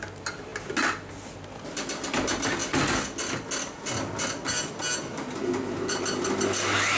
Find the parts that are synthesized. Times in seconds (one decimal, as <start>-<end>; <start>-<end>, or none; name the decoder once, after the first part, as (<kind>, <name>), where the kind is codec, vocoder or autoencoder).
none